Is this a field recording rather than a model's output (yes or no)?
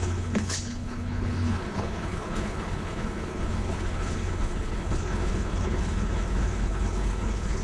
no